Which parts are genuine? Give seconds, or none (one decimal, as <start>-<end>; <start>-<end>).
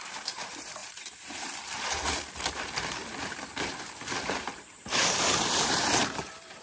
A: none